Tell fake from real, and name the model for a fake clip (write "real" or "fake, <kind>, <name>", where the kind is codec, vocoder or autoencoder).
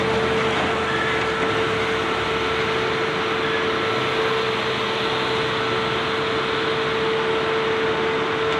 real